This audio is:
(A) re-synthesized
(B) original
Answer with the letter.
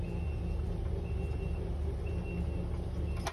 B